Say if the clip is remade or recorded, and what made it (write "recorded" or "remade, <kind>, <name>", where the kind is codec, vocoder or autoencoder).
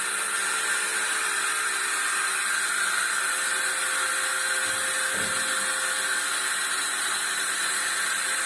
recorded